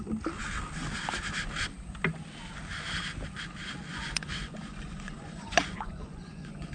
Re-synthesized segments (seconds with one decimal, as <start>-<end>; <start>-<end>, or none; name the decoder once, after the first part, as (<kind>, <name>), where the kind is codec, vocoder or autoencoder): 3.9-6.7 (vocoder, Vocos)